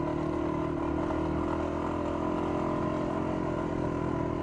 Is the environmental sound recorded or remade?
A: recorded